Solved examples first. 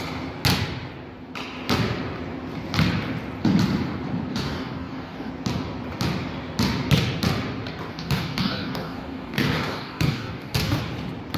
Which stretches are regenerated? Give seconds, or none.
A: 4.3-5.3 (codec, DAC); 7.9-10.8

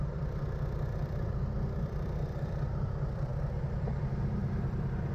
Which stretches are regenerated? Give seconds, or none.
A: 0.0-5.1 (vocoder, BigVGAN v2)

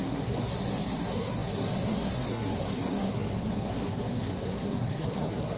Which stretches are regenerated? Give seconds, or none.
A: 0.0-5.6 (codec, SNAC)

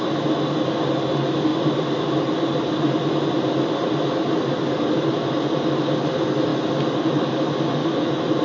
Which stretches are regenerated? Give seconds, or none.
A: 7.8-8.4 (autoencoder, DAC-VAE)

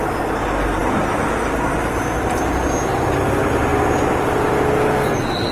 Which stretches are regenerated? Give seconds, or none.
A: none

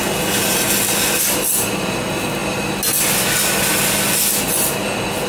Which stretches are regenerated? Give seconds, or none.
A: none

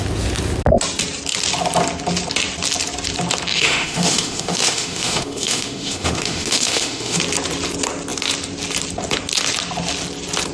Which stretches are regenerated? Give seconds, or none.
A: 3.5-7.2 (autoencoder, DAC-VAE)

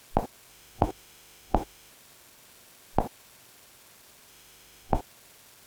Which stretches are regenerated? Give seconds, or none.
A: 0.5-1.9 (autoencoder, DAC-VAE); 4.3-5.0